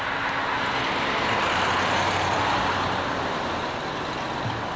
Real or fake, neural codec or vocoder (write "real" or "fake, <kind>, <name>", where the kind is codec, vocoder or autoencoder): real